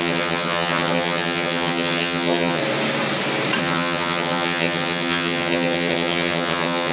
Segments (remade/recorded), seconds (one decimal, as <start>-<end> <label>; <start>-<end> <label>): 0.0-2.6 remade; 2.6-3.6 recorded; 3.6-6.9 remade